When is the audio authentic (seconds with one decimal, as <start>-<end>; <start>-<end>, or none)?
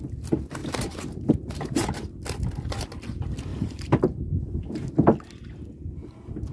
0.0-0.6; 2.2-3.5; 4.9-6.5